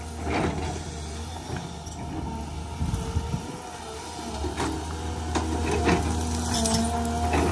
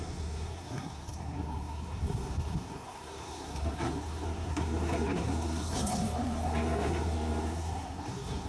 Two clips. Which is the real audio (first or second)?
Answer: first